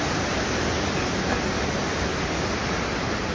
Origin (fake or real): real